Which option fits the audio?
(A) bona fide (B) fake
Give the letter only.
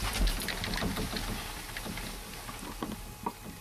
A